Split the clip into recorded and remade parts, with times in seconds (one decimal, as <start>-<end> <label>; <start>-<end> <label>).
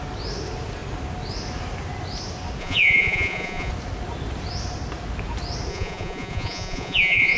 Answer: 0.0-2.6 recorded; 2.6-3.7 remade; 3.7-5.7 recorded; 5.7-7.4 remade